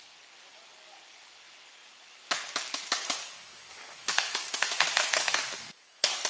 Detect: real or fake fake